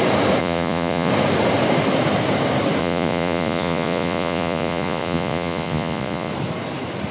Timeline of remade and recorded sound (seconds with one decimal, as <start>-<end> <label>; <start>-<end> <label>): 0.0-0.4 recorded; 0.4-1.1 remade; 1.1-2.8 recorded; 2.8-6.3 remade; 6.3-7.1 recorded